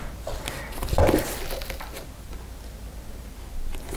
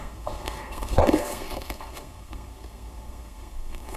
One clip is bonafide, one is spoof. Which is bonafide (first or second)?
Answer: first